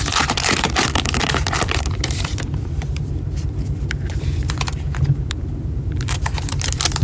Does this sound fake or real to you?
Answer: fake